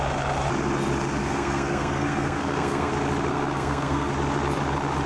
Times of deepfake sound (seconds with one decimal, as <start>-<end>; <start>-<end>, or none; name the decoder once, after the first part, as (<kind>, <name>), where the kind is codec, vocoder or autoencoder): 1.2-2.9 (codec, SNAC); 3.3-4.1